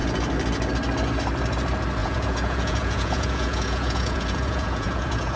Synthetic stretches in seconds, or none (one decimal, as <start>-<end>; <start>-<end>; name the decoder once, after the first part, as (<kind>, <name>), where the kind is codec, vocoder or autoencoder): 2.0-5.4 (vocoder, Vocos)